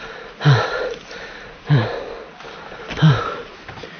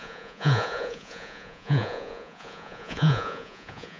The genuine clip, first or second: first